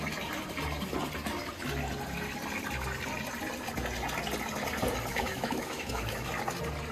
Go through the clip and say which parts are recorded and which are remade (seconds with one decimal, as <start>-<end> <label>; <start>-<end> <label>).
0.0-5.1 recorded; 5.1-6.3 remade; 6.3-6.9 recorded